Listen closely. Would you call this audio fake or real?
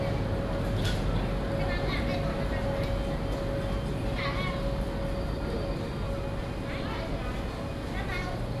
real